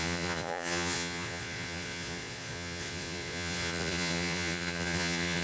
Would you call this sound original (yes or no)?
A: no